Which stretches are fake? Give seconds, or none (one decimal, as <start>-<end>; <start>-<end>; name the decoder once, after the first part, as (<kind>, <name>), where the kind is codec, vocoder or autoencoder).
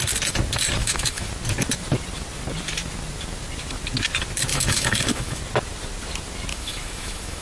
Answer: 0.8-1.3 (autoencoder, DAC-VAE); 4.5-5.4; 6.5-7.4